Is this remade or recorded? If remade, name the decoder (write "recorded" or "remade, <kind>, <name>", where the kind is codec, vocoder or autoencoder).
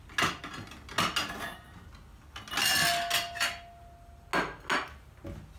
recorded